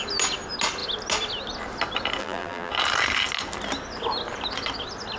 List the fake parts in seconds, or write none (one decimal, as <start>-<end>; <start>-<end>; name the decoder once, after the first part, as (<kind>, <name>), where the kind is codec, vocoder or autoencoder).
2.2-2.7 (vocoder, BigVGAN v2)